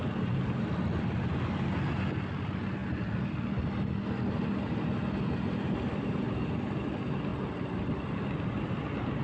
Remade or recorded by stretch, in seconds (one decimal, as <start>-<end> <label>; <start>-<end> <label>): 0.0-9.2 recorded